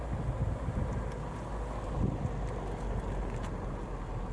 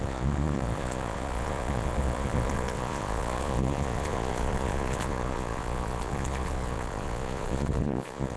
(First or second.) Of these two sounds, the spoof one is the second